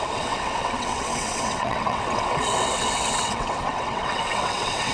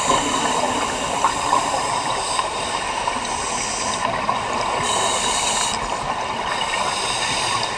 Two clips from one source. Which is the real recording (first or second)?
second